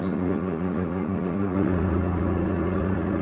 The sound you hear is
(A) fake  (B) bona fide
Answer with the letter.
A